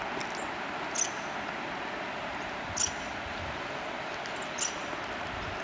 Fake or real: real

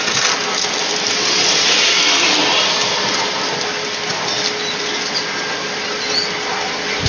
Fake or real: real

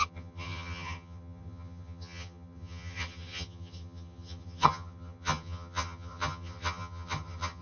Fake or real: fake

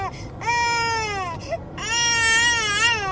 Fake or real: real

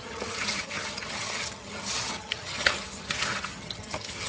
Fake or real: fake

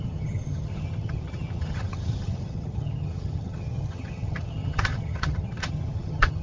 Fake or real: fake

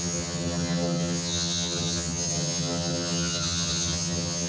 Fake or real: fake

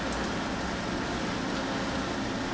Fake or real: real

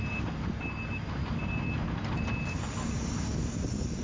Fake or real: real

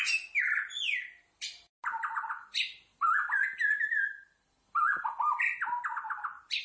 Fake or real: real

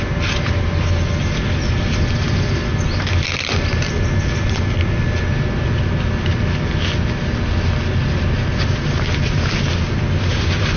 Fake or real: real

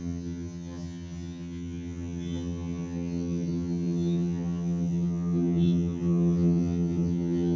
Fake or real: fake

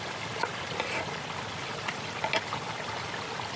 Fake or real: real